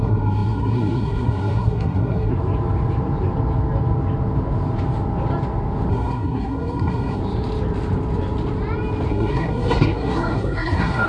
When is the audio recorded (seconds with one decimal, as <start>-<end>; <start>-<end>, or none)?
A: 2.3-5.9; 7.2-9.1